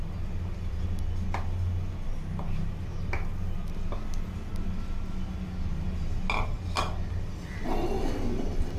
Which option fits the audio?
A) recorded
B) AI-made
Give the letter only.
A